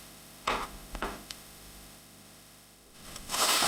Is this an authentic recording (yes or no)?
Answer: no